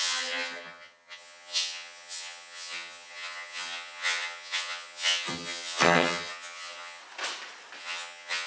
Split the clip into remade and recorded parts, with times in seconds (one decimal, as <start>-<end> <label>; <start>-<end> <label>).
0.0-7.0 remade; 7.0-7.8 recorded; 7.8-8.5 remade